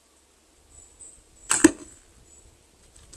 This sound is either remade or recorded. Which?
recorded